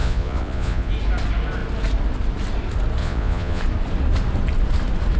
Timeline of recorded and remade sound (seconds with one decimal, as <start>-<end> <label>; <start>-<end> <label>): 0.0-0.9 remade; 0.9-3.0 recorded; 3.0-3.6 remade; 3.6-5.2 recorded